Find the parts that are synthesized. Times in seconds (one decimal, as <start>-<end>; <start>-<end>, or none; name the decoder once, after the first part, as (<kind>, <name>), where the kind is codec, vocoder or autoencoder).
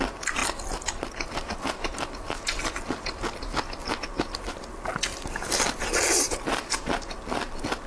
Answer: none